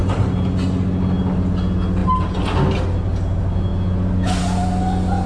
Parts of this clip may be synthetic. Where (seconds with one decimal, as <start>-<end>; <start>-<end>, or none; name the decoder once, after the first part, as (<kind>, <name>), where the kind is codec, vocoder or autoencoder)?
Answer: none